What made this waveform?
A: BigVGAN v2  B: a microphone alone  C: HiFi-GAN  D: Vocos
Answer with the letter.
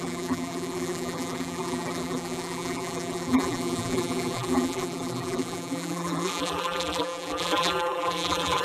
A